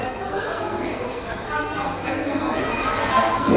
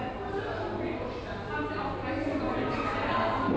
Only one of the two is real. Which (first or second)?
second